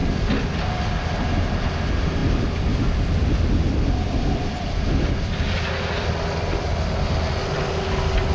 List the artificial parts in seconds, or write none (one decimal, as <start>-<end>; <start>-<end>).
none